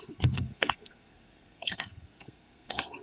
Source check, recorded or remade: remade